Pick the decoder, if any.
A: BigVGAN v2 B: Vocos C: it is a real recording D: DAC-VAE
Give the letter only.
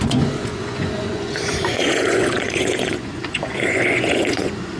B